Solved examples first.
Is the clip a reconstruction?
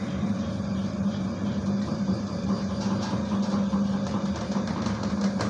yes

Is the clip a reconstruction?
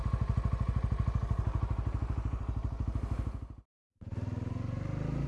no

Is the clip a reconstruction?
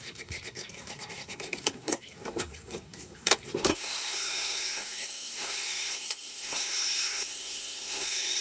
yes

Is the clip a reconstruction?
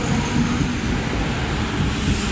no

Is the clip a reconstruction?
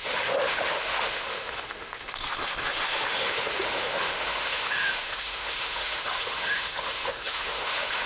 yes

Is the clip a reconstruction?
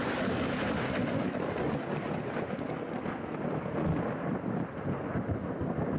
no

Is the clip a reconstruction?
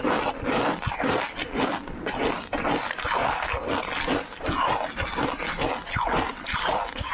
no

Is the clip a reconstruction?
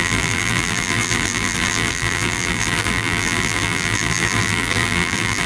yes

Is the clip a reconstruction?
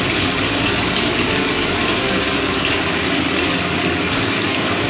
yes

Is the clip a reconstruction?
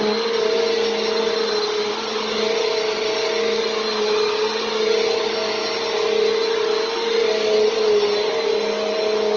no